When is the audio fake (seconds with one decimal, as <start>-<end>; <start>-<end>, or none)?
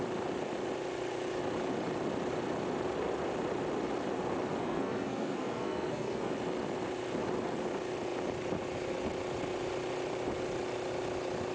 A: 4.6-6.3